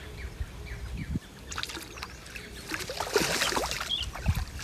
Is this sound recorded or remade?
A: recorded